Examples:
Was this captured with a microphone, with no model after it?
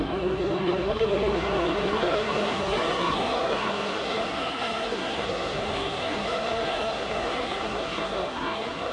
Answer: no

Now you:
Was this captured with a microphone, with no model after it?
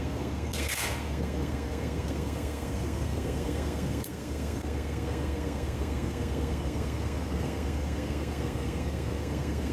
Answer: no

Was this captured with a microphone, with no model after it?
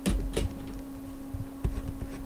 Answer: yes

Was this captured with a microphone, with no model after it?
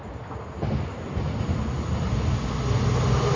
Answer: yes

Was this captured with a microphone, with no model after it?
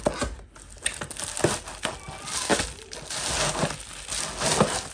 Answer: yes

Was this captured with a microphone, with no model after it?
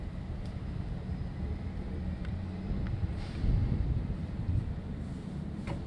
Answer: yes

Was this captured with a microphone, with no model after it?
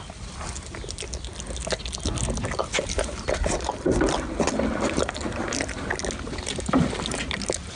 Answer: yes